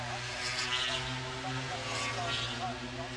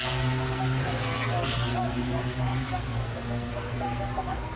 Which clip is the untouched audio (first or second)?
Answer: first